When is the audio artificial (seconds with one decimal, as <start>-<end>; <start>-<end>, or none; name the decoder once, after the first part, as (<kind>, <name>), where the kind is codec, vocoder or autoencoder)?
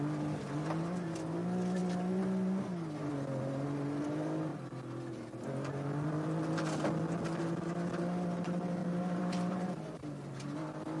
8.8-10.0 (vocoder, BigVGAN v2)